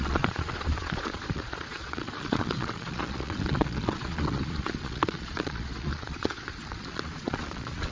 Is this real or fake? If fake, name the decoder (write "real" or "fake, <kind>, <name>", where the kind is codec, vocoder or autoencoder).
fake, vocoder, Vocos